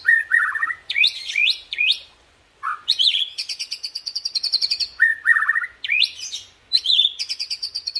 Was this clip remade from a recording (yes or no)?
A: yes